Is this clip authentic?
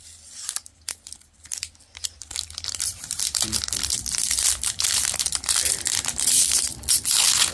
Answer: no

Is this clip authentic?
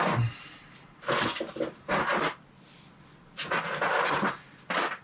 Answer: no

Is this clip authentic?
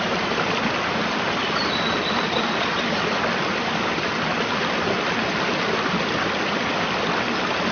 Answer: no